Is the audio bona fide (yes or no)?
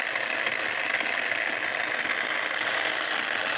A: yes